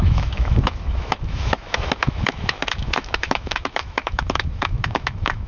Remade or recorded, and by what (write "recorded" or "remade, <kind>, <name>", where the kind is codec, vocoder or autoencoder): remade, autoencoder, DAC-VAE